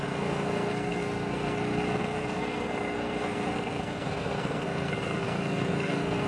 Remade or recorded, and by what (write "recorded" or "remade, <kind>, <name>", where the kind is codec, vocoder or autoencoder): remade, codec, SNAC